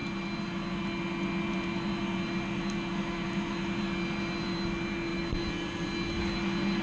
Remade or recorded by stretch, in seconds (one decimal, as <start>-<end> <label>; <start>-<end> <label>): 0.0-6.8 recorded